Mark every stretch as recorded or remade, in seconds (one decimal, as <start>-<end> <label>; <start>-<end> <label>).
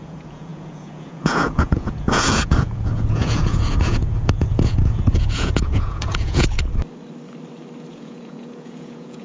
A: 0.0-6.7 remade; 6.7-7.9 recorded; 7.9-9.2 remade